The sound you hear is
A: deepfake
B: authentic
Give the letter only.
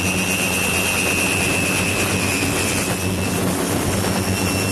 B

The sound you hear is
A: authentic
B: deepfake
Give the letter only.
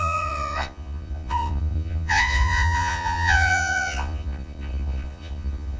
B